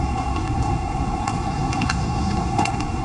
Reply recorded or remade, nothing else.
remade